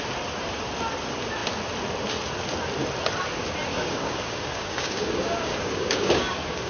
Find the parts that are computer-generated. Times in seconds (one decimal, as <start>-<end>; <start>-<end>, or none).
3.7-6.7